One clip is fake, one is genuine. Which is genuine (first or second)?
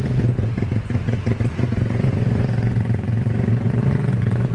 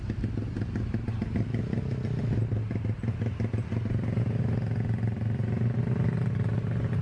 second